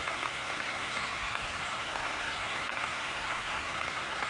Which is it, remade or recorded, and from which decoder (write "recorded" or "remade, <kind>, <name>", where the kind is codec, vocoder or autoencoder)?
remade, codec, SNAC